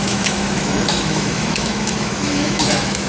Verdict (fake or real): fake